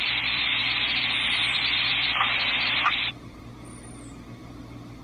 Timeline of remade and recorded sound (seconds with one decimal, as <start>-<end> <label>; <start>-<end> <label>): 0.0-0.6 recorded; 0.6-3.4 remade; 3.4-5.0 recorded